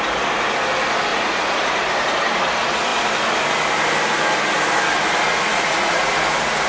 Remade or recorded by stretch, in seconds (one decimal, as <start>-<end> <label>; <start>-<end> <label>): 0.0-1.1 recorded; 1.1-1.8 remade; 1.8-5.3 recorded; 5.3-6.1 remade; 6.1-6.7 recorded